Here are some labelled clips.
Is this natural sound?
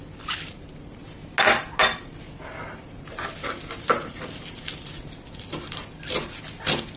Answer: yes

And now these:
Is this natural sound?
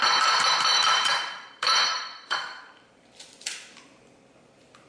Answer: no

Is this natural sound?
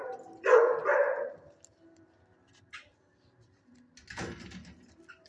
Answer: no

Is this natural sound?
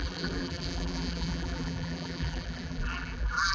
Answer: no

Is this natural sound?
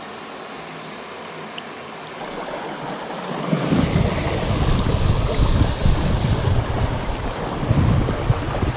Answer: yes